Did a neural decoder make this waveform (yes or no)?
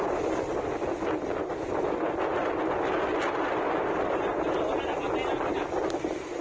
no